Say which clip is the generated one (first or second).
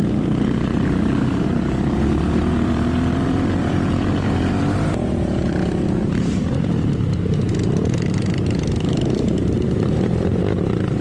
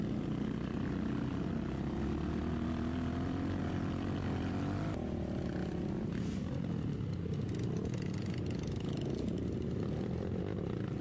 first